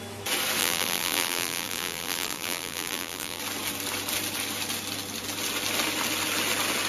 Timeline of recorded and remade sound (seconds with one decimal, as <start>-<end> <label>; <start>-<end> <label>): 0.0-0.6 recorded; 0.6-3.4 remade; 3.4-6.9 recorded